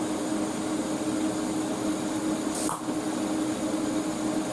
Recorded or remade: recorded